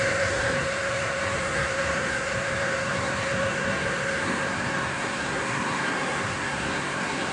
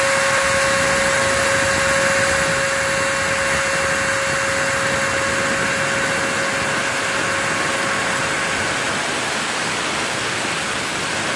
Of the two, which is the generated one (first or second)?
first